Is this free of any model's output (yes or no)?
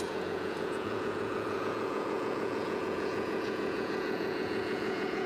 no